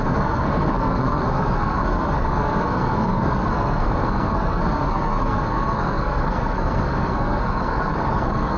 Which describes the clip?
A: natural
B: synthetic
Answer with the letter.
B